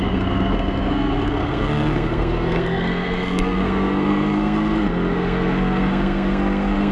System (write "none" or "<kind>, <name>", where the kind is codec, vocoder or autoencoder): codec, SNAC